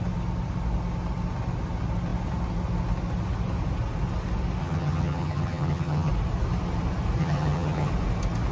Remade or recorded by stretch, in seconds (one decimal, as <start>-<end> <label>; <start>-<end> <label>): 0.0-4.6 recorded; 4.6-6.1 remade; 6.1-7.2 recorded; 7.2-7.9 remade; 7.9-8.5 recorded